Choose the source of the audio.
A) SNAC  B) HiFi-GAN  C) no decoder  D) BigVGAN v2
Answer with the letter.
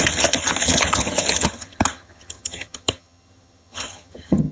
B